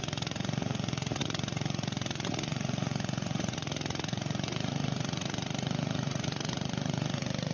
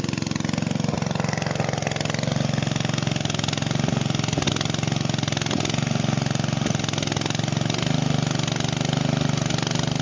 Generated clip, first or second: first